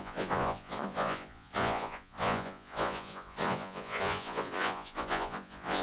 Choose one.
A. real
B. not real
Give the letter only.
B